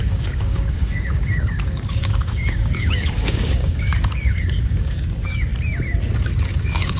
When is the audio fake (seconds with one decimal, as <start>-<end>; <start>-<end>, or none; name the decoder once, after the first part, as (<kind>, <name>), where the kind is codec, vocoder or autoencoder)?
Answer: 0.0-5.5 (codec, DAC); 6.6-7.0